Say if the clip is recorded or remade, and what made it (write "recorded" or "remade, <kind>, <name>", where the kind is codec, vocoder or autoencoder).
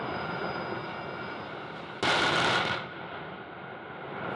recorded